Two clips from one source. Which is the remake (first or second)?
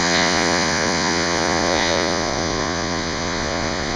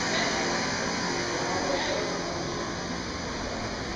first